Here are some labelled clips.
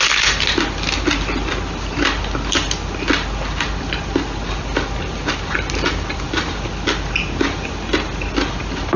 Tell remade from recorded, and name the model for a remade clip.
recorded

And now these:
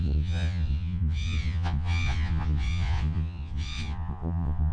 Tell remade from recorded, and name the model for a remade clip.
remade, vocoder, Vocos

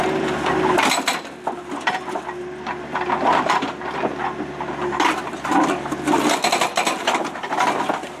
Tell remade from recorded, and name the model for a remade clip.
recorded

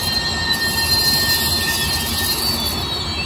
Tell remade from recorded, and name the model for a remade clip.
recorded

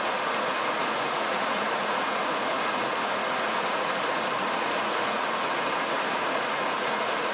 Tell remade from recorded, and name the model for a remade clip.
remade, vocoder, Vocos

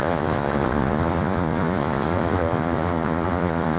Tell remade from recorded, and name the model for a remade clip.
remade, vocoder, Vocos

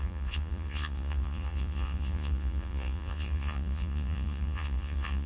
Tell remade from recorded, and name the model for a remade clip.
remade, vocoder, Vocos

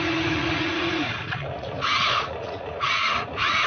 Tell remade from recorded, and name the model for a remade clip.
remade, vocoder, Vocos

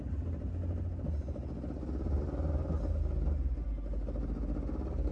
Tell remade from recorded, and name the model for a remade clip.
recorded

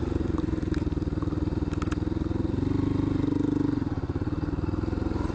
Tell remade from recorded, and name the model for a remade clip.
recorded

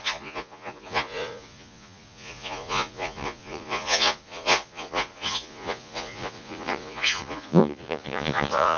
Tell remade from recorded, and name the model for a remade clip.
remade, vocoder, Vocos